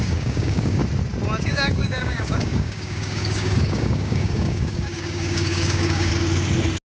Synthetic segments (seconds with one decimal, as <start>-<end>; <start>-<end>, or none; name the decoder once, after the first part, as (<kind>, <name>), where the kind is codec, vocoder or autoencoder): 0.0-0.8 (codec, DAC); 1.4-6.1